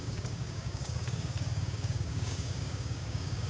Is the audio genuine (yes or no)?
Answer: no